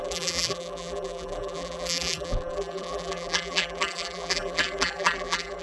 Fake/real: fake